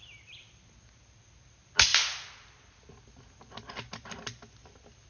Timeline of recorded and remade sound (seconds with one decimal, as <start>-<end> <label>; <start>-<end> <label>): 0.0-5.1 recorded